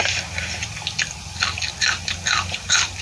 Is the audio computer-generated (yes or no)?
no